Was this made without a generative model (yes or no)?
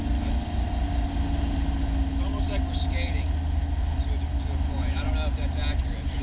yes